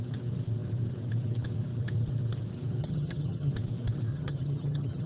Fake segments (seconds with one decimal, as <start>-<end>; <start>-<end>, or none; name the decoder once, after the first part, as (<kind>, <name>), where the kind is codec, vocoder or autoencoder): 2.8-3.5 (vocoder, HiFi-GAN); 4.1-5.1